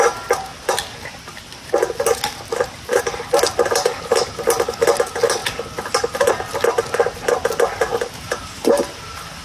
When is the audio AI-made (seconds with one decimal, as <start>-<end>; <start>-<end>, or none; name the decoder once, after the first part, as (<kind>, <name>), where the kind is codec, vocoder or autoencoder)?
7.9-8.8 (vocoder, BigVGAN v2)